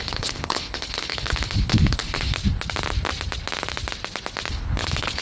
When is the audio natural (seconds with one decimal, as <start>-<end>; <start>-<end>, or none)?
2.4-4.5